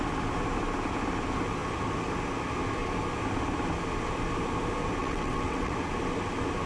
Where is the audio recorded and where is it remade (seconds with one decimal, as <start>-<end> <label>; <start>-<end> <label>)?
0.0-5.0 recorded; 5.0-5.7 remade; 5.7-6.7 recorded

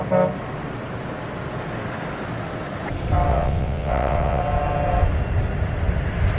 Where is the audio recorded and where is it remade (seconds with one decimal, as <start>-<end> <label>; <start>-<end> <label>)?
0.0-3.3 recorded; 3.3-4.4 remade; 4.4-6.4 recorded

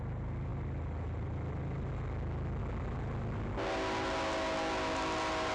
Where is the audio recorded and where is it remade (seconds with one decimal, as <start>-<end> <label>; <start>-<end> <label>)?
0.0-5.5 recorded

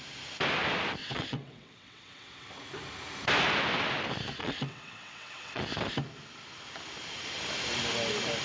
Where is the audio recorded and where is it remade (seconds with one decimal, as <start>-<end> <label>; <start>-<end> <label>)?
0.0-1.0 recorded; 1.0-2.5 remade; 2.5-4.4 recorded; 4.4-5.6 remade; 5.6-8.4 recorded